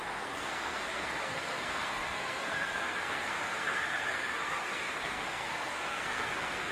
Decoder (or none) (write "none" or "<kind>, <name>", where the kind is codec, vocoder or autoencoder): codec, SNAC